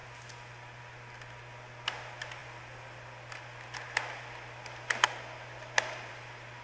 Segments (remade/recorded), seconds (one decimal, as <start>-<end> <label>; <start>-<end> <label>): 0.0-6.6 recorded